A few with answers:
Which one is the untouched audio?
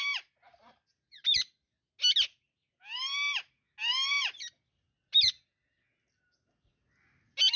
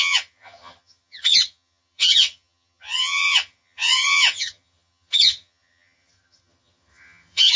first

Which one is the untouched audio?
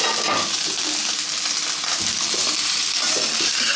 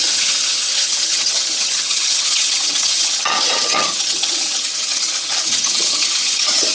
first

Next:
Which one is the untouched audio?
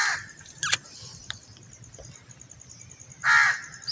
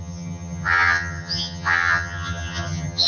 first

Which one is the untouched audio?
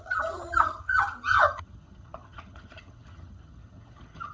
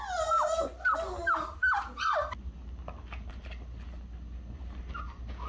second